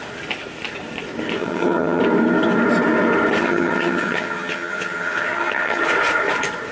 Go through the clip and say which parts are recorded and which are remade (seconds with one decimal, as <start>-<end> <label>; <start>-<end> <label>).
0.0-1.4 recorded; 1.4-2.0 remade; 2.0-3.4 recorded; 3.4-5.8 remade; 5.8-6.7 recorded